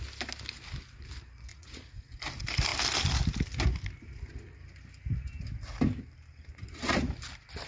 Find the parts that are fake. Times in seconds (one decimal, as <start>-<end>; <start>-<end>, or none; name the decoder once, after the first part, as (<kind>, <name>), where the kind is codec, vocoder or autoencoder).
1.5-2.2 (vocoder, Vocos)